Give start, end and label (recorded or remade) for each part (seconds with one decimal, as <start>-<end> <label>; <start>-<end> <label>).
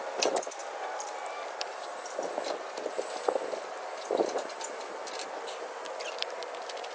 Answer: 0.0-6.9 recorded